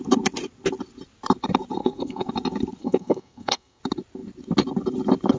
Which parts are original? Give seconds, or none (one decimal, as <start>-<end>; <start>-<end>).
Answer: 0.0-1.8; 2.3-2.8; 3.8-5.4